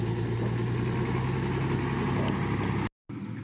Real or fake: real